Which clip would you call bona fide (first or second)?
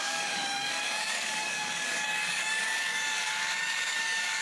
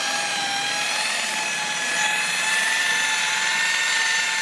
second